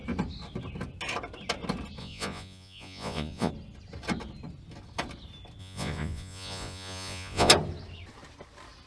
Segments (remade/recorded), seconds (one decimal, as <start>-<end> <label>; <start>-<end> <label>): 0.0-2.0 recorded; 2.0-3.5 remade; 3.5-5.6 recorded; 5.6-7.5 remade; 7.5-8.9 recorded